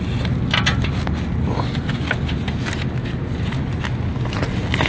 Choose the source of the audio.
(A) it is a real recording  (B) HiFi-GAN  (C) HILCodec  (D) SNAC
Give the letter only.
A